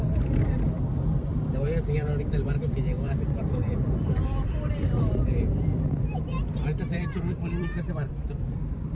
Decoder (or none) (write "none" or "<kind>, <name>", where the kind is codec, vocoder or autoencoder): vocoder, BigVGAN v2